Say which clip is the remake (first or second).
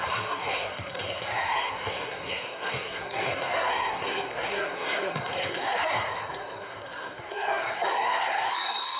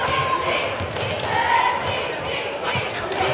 first